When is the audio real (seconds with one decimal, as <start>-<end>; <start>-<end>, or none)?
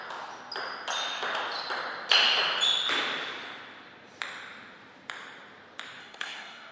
0.0-6.0